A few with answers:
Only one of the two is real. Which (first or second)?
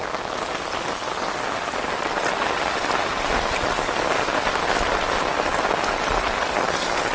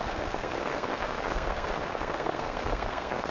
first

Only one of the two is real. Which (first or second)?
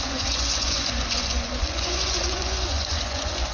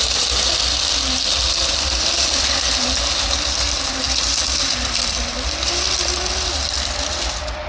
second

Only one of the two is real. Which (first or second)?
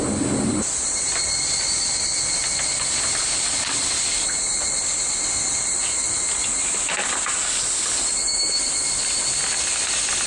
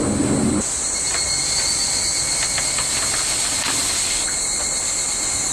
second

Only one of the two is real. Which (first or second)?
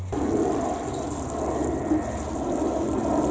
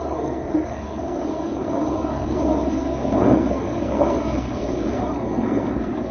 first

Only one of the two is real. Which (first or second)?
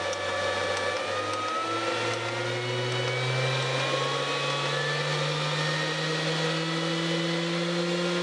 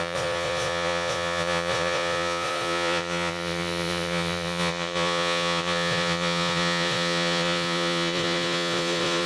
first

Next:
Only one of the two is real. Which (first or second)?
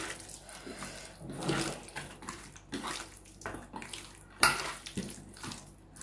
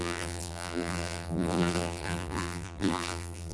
first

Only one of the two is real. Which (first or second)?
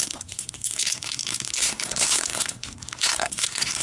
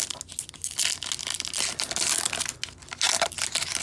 second